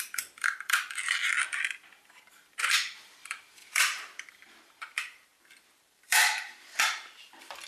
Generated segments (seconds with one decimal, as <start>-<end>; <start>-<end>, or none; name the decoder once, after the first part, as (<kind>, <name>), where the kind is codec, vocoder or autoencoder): 0.0-7.7 (vocoder, BigVGAN v2)